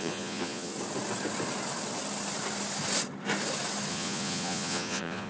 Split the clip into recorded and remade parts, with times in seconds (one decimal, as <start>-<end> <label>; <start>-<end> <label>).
0.0-0.7 remade; 0.7-3.9 recorded; 3.9-5.3 remade